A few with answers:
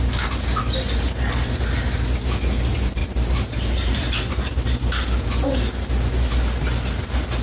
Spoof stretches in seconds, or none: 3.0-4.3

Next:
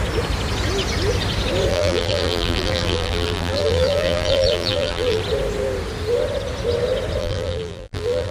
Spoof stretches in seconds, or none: 1.7-5.2; 7.2-8.3

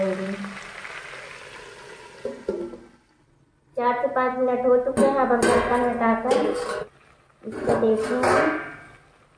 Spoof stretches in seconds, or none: none

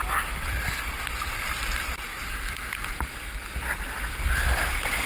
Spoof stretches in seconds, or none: none

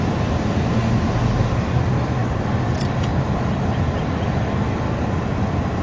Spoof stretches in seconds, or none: none

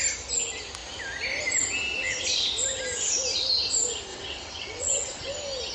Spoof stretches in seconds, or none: 4.1-5.3

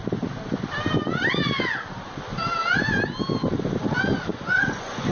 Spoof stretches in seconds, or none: 4.3-5.1